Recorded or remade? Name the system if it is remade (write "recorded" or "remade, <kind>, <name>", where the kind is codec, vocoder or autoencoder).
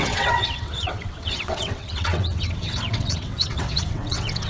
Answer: remade, vocoder, WaveNeXt